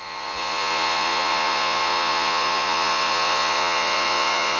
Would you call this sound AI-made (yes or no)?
yes